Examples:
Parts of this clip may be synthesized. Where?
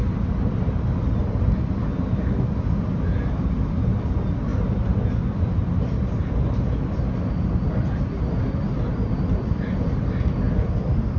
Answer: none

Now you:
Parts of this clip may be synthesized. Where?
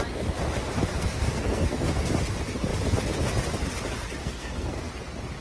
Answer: 0.8-2.1 (codec, SNAC); 4.2-4.9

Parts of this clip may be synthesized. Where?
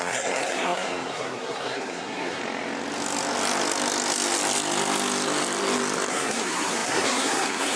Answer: 0.0-2.4 (codec, SNAC); 6.1-7.8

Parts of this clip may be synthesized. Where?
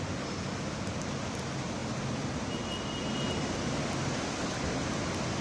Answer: none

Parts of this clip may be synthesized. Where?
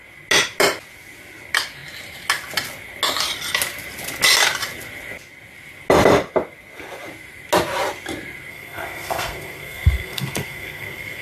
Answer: 8.5-11.2 (codec, SNAC)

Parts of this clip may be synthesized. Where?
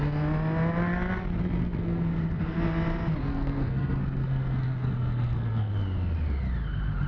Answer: 1.6-2.6 (codec, SNAC); 3.3-5.7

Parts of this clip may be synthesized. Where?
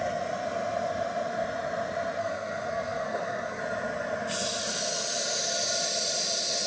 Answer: 2.2-3.6 (codec, SNAC)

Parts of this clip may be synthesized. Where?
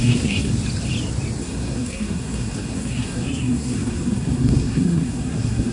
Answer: 0.0-0.5 (codec, SNAC); 1.4-5.7